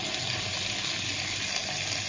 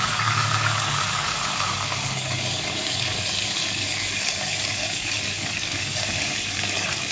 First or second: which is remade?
second